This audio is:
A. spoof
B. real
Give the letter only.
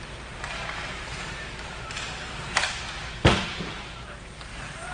A